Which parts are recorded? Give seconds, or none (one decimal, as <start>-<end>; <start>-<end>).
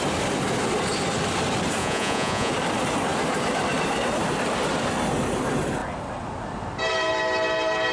0.0-1.8; 2.5-7.9